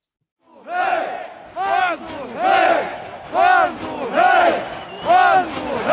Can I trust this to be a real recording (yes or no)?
yes